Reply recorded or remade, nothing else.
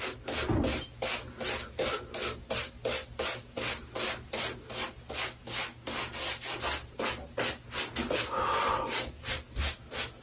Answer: recorded